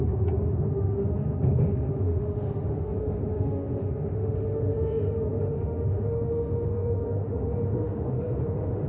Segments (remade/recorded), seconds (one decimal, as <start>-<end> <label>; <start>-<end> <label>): 0.0-8.9 remade